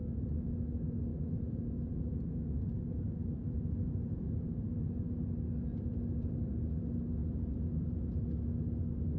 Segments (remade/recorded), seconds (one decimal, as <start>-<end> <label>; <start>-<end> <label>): 0.0-0.5 remade; 0.5-1.1 recorded; 1.1-5.3 remade; 5.3-7.2 recorded; 7.2-8.0 remade; 8.0-9.2 recorded